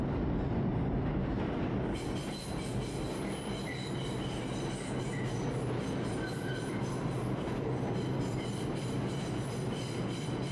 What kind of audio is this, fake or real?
real